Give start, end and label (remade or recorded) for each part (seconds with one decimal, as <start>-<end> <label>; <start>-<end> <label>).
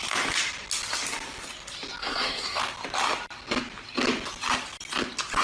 0.0-2.0 recorded; 2.0-2.6 remade; 2.6-5.4 recorded